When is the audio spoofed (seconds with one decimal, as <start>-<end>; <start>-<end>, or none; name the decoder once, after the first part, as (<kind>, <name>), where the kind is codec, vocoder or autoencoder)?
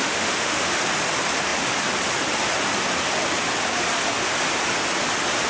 0.0-0.7 (autoencoder, DAC-VAE)